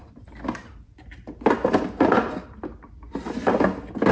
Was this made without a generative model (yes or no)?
yes